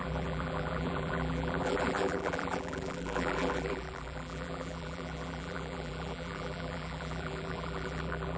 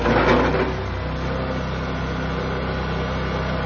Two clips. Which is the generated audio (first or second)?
first